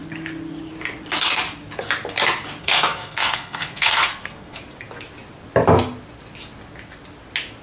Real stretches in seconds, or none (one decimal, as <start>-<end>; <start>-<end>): 0.0-2.6; 4.6-7.6